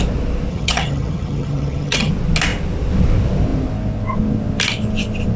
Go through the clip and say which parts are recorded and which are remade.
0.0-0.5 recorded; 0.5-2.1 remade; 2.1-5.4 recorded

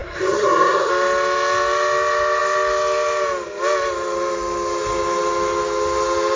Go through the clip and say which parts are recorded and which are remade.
0.0-0.9 remade; 0.9-6.4 recorded

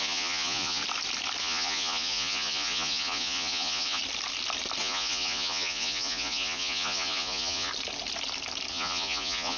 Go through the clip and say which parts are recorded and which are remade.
0.0-0.8 remade; 0.8-1.4 recorded; 1.4-4.0 remade; 4.0-4.8 recorded; 4.8-7.7 remade; 7.7-8.7 recorded; 8.7-9.6 remade

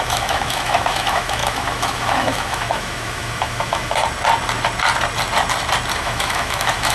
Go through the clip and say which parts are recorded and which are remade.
0.0-4.0 remade; 4.0-6.0 recorded; 6.0-6.9 remade

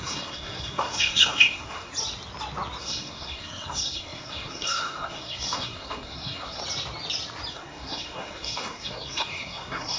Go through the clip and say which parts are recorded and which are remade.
0.0-1.9 remade; 1.9-2.8 recorded; 2.8-6.6 remade; 6.6-7.5 recorded; 7.5-10.0 remade